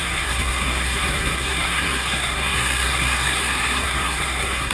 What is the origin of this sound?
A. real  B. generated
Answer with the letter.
B